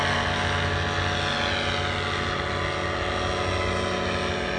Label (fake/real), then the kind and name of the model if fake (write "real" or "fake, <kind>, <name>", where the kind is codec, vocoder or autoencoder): real